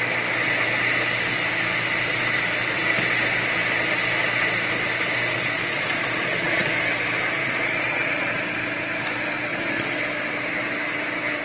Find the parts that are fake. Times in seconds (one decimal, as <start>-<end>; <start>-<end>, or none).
5.3-6.7; 7.4-8.3; 9.5-10.0